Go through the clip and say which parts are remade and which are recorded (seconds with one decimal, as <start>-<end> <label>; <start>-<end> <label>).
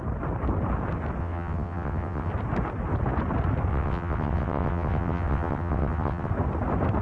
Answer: 0.0-1.2 recorded; 1.2-2.3 remade; 2.3-3.7 recorded; 3.7-6.3 remade; 6.3-7.0 recorded